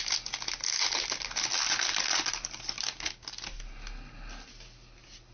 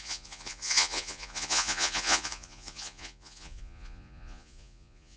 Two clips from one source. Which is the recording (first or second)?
first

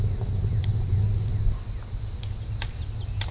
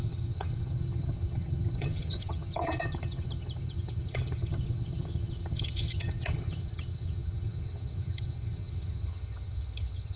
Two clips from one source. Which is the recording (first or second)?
first